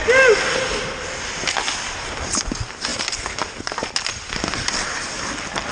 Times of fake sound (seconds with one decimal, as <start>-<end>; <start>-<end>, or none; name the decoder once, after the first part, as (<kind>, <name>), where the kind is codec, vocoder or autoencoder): none